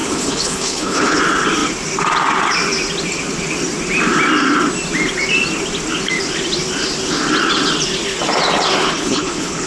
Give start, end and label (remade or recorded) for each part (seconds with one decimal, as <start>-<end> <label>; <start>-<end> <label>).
0.0-1.2 remade; 1.2-8.8 recorded; 8.8-9.7 remade